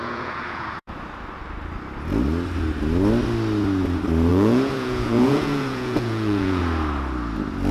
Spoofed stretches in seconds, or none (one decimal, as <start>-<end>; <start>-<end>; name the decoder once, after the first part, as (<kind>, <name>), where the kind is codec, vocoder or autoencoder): 0.0-0.9 (vocoder, Vocos); 4.3-6.6